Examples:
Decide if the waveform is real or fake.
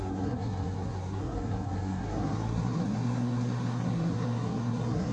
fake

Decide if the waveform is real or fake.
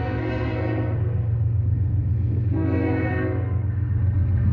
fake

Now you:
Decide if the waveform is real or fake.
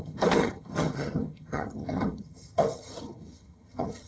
fake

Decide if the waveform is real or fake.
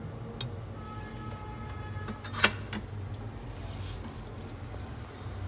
real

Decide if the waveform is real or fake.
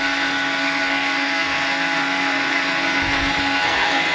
fake